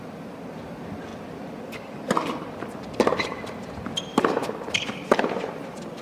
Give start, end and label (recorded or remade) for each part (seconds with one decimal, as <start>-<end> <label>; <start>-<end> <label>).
0.0-1.1 remade; 1.1-4.7 recorded; 4.7-6.0 remade